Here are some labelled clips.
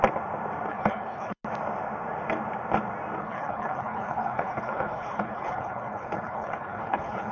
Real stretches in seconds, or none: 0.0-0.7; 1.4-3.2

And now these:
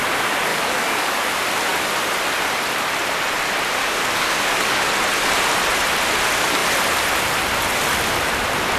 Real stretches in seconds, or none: 0.0-0.5; 1.2-3.8; 4.9-8.8

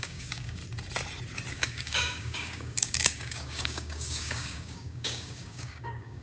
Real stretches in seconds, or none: 0.6-1.5

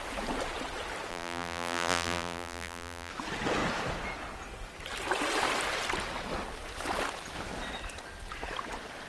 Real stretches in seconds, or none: 0.0-1.1; 3.1-9.1

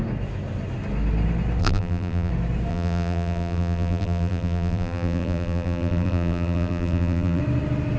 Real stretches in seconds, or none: 0.0-1.6; 2.3-2.7; 7.4-8.0

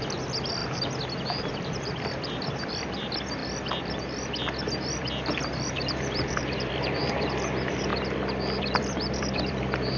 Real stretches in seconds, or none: 0.6-1.5; 7.9-8.6

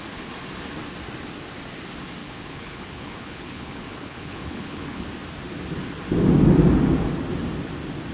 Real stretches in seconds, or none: 0.0-2.2; 5.1-8.1